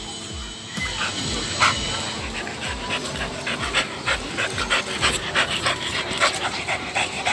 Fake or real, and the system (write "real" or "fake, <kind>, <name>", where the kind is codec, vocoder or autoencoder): fake, vocoder, BigVGAN v2